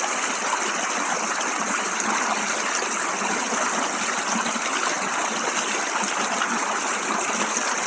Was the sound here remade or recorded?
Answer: recorded